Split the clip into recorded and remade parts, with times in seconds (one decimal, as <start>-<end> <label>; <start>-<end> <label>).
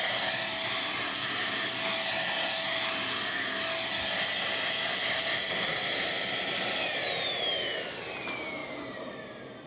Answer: 0.0-9.7 recorded